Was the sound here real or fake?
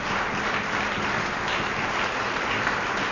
real